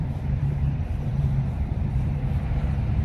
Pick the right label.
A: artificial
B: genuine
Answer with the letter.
A